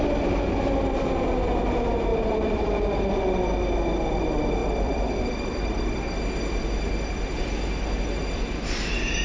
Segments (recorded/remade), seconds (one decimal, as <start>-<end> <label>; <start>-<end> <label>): 0.0-2.1 recorded; 2.1-3.2 remade; 3.2-4.6 recorded; 4.6-6.2 remade; 6.2-9.2 recorded